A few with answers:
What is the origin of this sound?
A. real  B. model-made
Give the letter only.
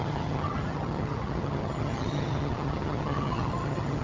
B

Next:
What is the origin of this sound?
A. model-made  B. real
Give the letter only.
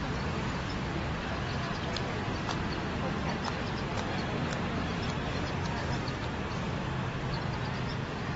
B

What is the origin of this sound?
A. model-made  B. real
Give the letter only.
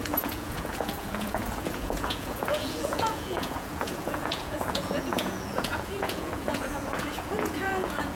A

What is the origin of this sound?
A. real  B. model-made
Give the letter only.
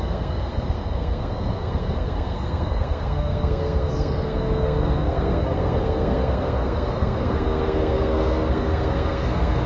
B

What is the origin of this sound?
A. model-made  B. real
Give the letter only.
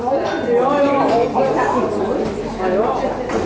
B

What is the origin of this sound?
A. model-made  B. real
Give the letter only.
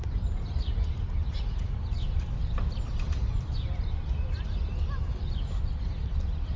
B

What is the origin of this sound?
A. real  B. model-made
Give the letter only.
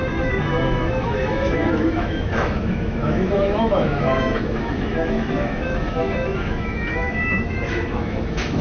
B